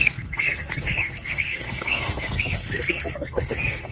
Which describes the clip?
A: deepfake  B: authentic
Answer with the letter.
A